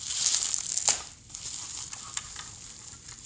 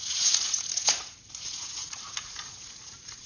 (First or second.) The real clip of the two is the first